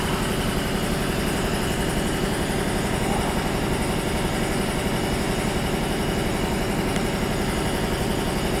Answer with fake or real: real